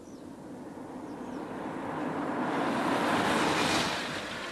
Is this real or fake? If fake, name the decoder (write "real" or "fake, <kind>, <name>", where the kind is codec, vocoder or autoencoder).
real